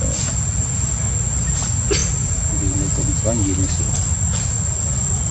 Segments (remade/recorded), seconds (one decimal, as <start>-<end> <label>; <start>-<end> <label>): 0.0-5.3 recorded